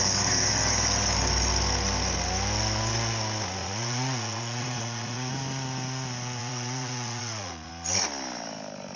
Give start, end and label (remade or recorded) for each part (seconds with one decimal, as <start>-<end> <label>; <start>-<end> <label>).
0.0-3.6 recorded; 3.6-5.3 remade; 5.3-6.4 recorded; 6.4-7.7 remade; 7.7-9.0 recorded